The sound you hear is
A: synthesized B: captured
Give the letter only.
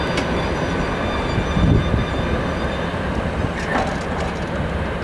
B